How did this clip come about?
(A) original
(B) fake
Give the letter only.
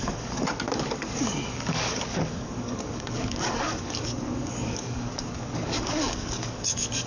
B